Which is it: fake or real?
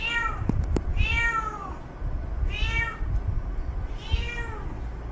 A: real